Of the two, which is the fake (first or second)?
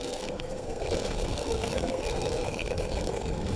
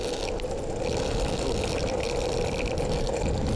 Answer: first